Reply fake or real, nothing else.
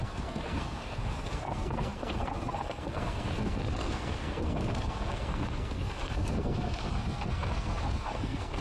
fake